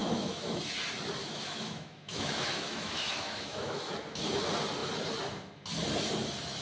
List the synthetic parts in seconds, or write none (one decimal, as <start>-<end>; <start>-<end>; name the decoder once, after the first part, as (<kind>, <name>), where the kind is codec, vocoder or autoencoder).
0.0-0.6 (autoencoder, DAC-VAE); 1.2-3.9